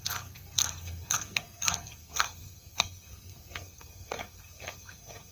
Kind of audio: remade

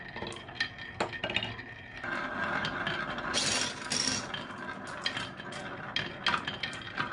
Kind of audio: recorded